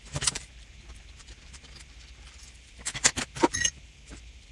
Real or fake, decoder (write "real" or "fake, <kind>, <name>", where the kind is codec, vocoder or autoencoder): fake, vocoder, BigVGAN v2